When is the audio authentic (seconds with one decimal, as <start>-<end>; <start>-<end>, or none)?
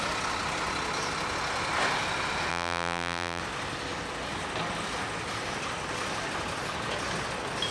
0.0-2.5; 3.4-7.7